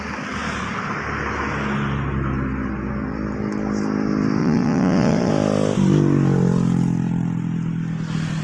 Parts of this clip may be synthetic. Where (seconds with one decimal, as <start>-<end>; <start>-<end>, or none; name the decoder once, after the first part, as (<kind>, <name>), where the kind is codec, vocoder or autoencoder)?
4.4-5.3 (vocoder, Vocos)